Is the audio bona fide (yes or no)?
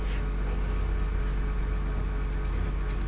yes